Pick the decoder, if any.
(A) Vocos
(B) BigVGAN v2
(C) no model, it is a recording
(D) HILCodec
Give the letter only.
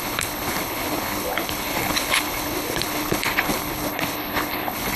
D